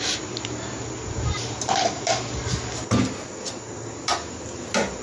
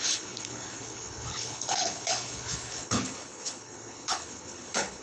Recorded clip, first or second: first